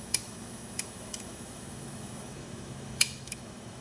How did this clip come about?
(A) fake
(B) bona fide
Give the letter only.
A